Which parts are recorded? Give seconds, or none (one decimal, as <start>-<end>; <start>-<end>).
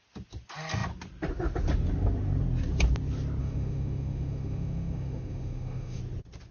0.0-3.4; 6.0-6.5